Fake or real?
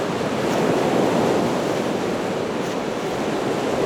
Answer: real